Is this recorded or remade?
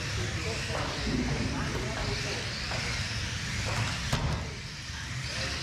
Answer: recorded